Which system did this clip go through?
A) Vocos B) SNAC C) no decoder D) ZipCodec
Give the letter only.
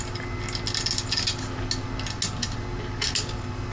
C